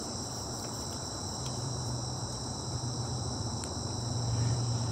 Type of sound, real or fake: fake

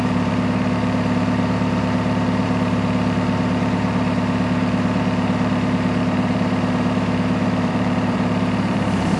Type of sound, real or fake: fake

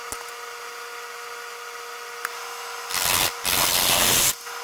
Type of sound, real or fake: real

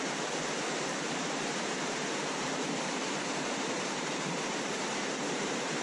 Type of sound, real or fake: fake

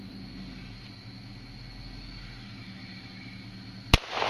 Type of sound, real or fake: real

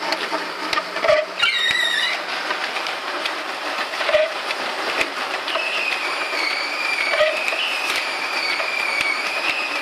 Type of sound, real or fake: fake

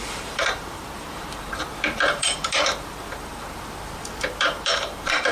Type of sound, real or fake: fake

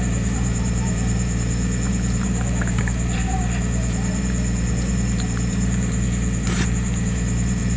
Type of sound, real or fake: fake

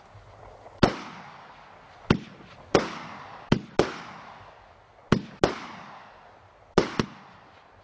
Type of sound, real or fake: real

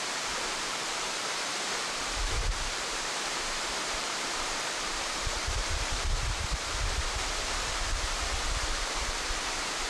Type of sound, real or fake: fake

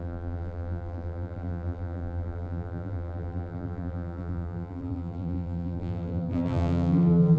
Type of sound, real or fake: fake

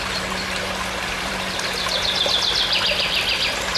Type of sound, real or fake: fake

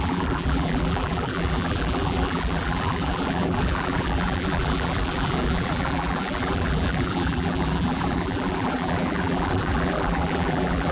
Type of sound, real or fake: fake